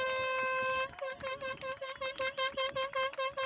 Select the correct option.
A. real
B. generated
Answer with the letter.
A